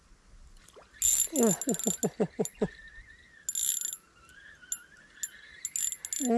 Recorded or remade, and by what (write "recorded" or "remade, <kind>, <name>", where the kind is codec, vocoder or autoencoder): recorded